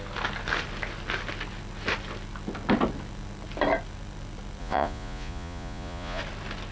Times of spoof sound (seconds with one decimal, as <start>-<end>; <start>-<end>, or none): 4.6-6.2